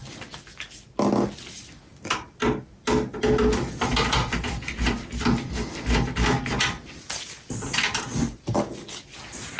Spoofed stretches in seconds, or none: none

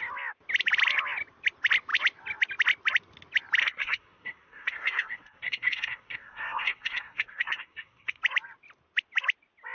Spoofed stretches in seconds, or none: 3.6-8.2 (codec, SNAC)

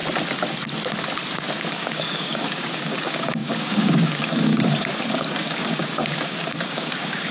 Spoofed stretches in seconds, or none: 1.6-7.3 (codec, DAC)

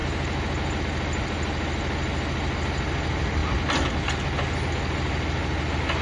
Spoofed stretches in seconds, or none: none

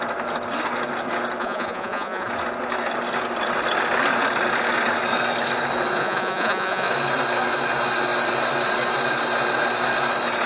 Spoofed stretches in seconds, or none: 1.4-2.3 (vocoder, Vocos); 6.0-6.9

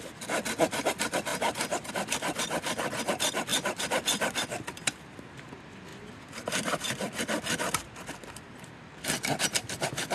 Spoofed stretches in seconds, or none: none

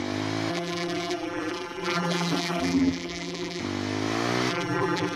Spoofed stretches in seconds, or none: 0.5-3.6 (vocoder, BigVGAN v2); 4.5-5.2